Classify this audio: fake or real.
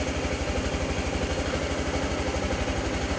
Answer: real